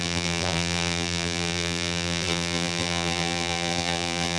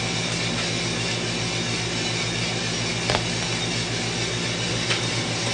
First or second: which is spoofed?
first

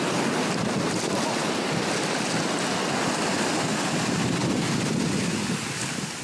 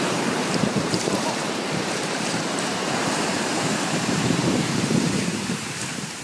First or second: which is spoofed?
second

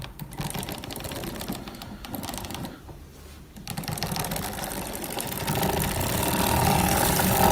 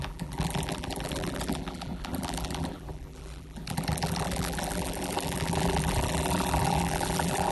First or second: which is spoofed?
second